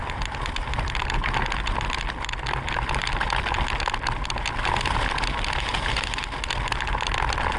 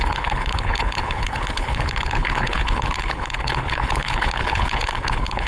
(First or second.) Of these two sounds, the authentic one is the first